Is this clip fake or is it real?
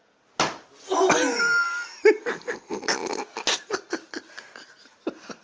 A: real